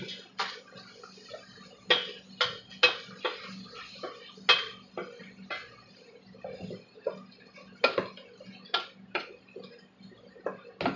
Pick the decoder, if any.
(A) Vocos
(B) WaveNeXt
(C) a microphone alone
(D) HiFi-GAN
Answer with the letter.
C